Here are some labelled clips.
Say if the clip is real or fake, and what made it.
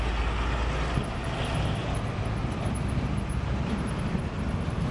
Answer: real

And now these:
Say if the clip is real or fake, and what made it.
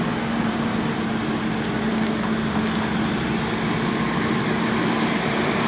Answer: real